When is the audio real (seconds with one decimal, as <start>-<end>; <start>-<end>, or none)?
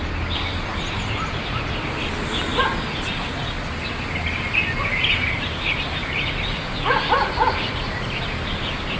0.0-9.0